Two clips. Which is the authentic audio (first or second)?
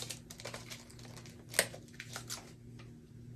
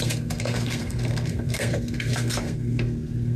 first